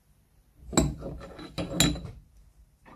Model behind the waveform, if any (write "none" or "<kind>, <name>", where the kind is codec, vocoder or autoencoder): none